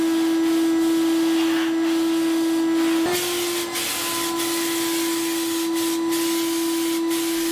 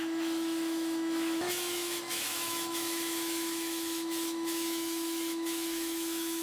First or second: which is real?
first